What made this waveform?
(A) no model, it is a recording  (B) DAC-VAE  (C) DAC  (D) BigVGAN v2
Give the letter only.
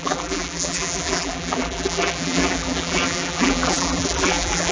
D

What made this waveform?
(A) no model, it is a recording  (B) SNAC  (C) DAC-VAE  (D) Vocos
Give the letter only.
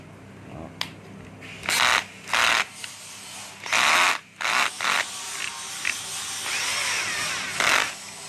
A